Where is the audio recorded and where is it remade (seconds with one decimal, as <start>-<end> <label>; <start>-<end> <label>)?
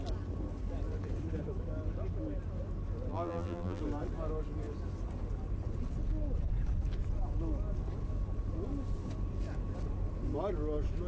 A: 0.0-3.1 recorded; 3.1-3.8 remade; 3.8-11.1 recorded